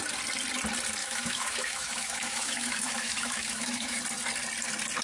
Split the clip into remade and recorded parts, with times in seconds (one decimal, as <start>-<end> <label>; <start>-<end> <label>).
0.0-1.0 recorded; 1.0-4.0 remade; 4.0-5.0 recorded